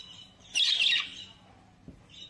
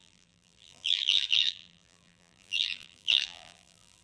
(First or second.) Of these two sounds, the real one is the first